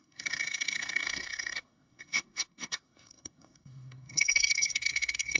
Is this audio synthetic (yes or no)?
yes